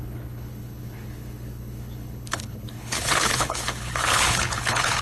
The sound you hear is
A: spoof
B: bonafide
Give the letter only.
A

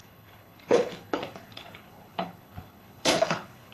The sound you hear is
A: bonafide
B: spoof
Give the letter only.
B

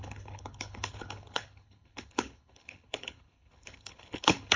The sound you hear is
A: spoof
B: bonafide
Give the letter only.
A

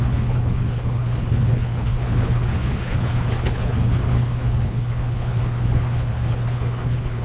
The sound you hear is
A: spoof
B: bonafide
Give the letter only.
A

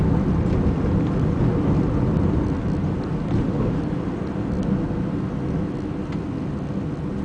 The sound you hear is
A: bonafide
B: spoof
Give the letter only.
A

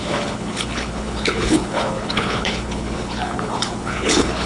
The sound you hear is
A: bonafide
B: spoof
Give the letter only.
B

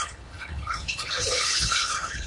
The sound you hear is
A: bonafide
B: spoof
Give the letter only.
B